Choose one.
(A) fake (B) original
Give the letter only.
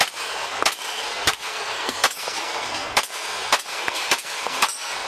A